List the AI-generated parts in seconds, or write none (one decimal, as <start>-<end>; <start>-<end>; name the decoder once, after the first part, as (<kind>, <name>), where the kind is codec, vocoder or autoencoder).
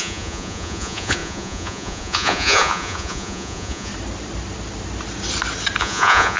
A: 0.0-3.9 (vocoder, Vocos); 5.8-6.4